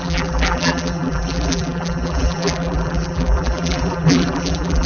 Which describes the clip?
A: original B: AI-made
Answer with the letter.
B